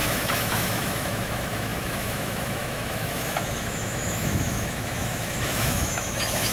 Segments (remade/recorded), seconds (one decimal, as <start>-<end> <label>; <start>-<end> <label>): 0.0-6.5 remade